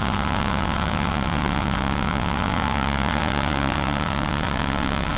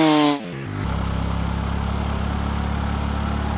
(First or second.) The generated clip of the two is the first